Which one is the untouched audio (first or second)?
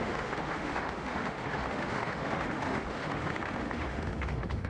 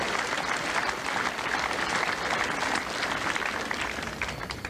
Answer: second